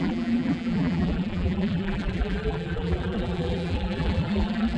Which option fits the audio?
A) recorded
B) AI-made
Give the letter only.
B